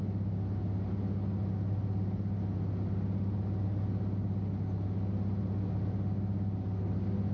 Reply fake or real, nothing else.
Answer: real